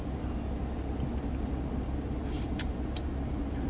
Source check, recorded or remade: recorded